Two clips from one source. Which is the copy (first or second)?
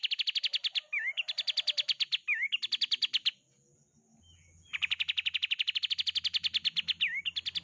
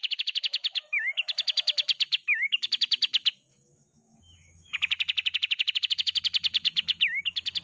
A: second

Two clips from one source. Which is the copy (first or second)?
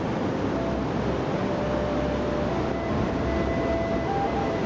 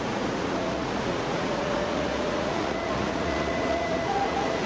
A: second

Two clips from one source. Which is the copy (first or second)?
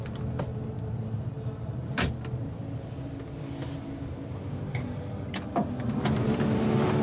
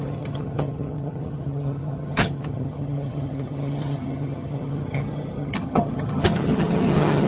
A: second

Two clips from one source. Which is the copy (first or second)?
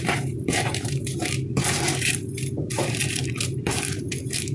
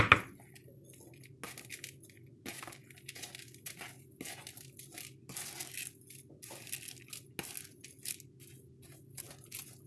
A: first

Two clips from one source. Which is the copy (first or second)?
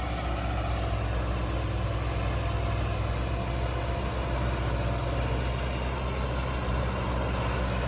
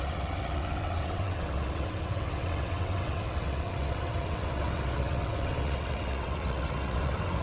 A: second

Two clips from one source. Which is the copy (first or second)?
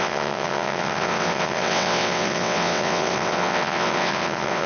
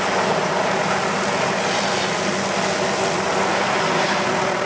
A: first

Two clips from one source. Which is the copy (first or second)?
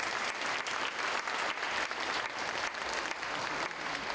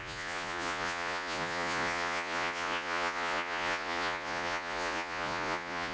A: second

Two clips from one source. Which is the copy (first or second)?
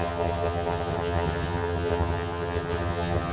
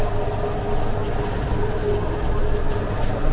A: first